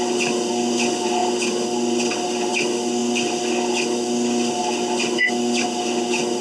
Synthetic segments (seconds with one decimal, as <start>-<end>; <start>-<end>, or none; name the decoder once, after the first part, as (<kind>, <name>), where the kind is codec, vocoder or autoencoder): none